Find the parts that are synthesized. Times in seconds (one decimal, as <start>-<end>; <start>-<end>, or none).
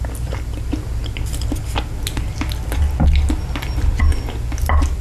none